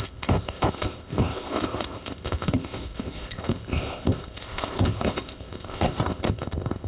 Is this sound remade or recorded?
remade